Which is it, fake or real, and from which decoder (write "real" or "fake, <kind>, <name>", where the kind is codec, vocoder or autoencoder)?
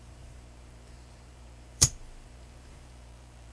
fake, vocoder, BigVGAN v2